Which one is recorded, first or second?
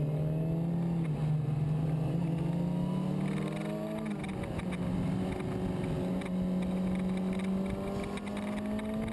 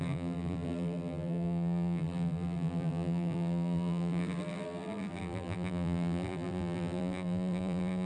first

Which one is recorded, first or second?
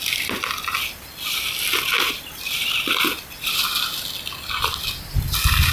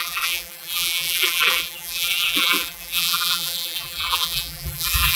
first